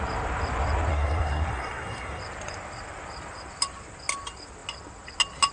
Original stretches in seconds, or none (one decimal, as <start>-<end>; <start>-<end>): 0.0-0.9; 2.2-5.5